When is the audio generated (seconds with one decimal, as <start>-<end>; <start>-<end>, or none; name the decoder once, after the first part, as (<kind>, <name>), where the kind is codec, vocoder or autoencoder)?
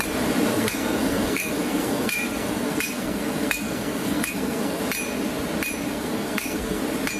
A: 0.5-4.8 (codec, SNAC); 5.9-6.8